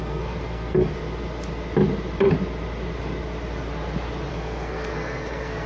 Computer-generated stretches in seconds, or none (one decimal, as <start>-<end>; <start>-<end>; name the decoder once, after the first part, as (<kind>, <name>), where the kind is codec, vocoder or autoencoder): 0.0-0.9 (codec, SNAC); 4.3-5.7